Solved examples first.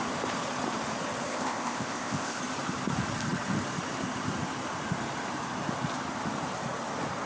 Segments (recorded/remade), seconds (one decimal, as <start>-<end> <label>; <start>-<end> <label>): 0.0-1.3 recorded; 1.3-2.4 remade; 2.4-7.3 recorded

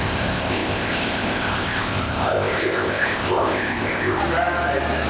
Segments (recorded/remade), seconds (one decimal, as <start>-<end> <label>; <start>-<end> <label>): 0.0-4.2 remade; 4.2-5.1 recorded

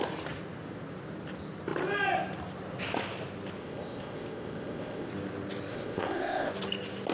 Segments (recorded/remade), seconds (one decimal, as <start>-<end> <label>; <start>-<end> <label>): 0.0-3.6 recorded; 3.6-5.1 remade; 5.1-5.7 recorded; 5.7-6.5 remade; 6.5-7.1 recorded